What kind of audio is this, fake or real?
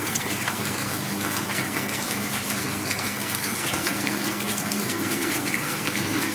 fake